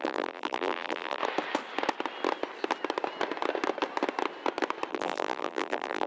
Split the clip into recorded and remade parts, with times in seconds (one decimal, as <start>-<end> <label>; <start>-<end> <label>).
0.0-1.2 remade; 1.2-4.9 recorded; 4.9-6.1 remade